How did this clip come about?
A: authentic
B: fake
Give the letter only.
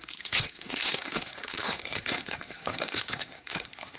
B